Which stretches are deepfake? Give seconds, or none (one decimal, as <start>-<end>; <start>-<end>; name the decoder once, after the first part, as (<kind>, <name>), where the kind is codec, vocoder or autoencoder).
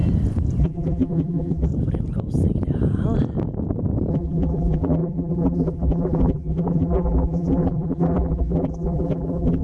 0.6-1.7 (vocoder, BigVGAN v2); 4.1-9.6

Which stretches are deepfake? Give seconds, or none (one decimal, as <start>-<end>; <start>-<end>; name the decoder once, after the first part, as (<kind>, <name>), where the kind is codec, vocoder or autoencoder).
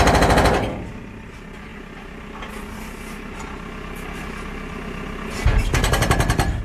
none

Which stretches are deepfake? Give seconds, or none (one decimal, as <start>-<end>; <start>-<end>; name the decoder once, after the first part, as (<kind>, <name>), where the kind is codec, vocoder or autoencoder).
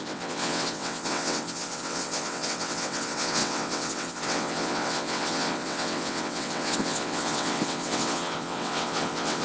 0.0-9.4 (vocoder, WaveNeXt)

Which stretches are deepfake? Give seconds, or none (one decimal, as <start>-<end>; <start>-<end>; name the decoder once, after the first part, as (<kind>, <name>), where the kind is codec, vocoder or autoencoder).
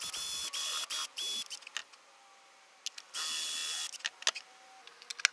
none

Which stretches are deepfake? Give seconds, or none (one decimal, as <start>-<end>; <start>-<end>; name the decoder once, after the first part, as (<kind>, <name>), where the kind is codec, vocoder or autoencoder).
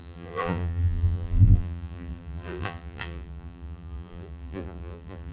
0.0-5.3 (vocoder, BigVGAN v2)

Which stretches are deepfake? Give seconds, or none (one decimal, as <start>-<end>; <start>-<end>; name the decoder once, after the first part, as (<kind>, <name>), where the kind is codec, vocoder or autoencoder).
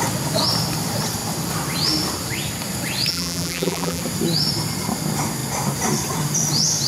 3.1-4.0 (vocoder, BigVGAN v2)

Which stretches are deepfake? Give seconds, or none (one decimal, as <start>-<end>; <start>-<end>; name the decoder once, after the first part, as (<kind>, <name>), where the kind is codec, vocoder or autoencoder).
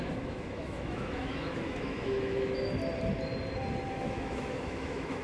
0.0-2.8 (autoencoder, DAC-VAE); 3.9-5.2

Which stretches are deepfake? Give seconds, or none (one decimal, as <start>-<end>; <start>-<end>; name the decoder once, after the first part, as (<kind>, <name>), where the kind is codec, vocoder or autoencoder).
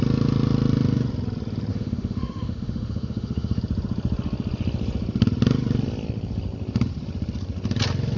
1.7-3.6 (autoencoder, DAC-VAE)